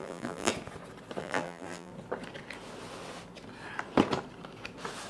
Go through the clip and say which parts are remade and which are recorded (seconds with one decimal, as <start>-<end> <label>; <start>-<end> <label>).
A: 0.0-0.5 remade; 0.5-1.2 recorded; 1.2-1.9 remade; 1.9-5.1 recorded